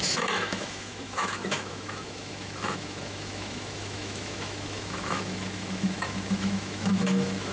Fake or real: fake